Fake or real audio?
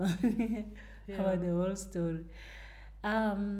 real